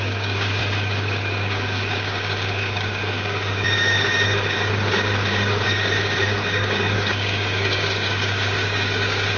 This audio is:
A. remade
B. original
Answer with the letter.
A